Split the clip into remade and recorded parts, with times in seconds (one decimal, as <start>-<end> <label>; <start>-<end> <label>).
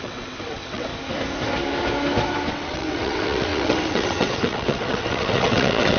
0.0-0.9 remade; 0.9-2.5 recorded; 2.5-6.0 remade